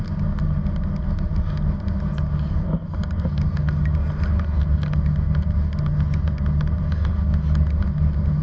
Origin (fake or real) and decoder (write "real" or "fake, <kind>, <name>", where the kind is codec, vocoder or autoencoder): real